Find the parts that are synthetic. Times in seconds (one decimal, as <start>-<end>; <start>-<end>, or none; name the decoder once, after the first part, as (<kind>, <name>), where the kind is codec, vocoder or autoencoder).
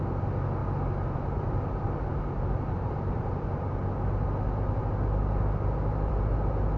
none